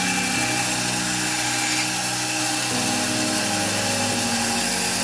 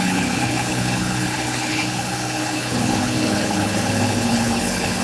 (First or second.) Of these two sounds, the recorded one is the first